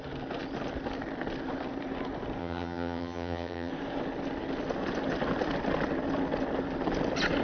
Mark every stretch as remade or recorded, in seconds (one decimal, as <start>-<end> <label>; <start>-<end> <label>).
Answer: 0.0-2.4 recorded; 2.4-3.7 remade; 3.7-7.4 recorded